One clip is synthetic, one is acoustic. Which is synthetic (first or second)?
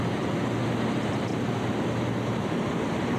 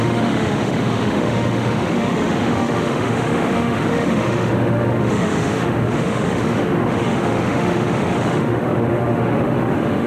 second